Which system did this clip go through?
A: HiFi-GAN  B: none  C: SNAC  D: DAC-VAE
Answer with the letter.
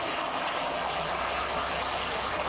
B